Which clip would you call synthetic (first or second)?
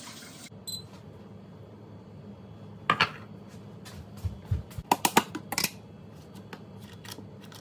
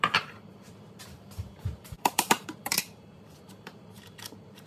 second